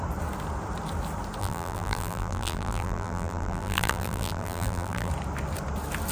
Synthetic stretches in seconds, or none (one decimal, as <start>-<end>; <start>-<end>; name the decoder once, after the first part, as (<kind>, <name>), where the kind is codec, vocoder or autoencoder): 1.4-5.1 (vocoder, BigVGAN v2)